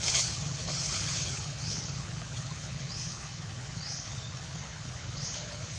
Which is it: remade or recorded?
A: remade